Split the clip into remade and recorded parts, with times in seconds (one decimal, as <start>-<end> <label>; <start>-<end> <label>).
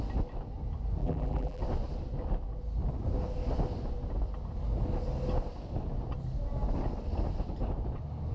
0.0-1.0 recorded; 1.0-1.6 remade; 1.6-8.3 recorded